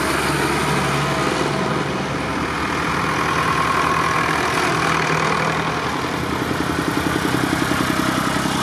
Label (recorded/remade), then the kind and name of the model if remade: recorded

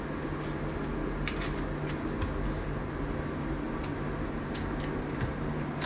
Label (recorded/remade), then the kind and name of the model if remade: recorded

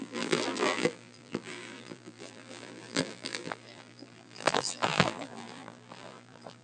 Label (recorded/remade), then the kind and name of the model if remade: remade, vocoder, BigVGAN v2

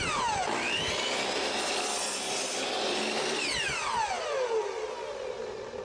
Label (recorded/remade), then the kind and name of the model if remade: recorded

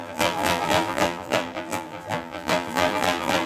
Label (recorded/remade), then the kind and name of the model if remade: remade, vocoder, BigVGAN v2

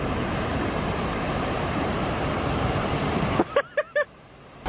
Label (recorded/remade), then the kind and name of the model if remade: recorded